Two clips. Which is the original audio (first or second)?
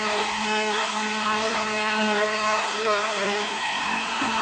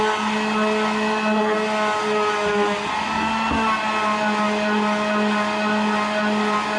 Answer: second